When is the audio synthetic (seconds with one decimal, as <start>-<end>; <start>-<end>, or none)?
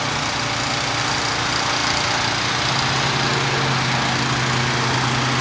none